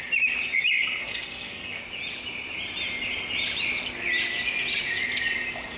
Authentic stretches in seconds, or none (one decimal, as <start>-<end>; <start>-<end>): 0.0-1.0; 1.8-5.8